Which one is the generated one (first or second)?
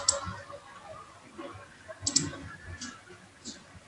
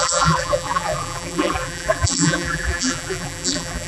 second